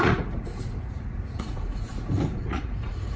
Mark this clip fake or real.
fake